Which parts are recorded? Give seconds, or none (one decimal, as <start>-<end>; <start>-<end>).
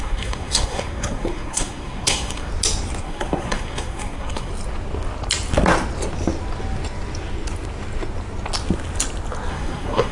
2.5-3.0; 4.5-9.5